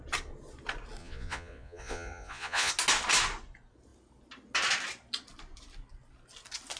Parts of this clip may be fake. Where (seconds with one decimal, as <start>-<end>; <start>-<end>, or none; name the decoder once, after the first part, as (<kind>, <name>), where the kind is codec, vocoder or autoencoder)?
1.0-2.7 (vocoder, Vocos)